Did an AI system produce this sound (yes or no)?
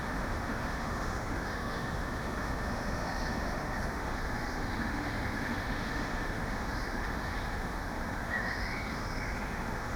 yes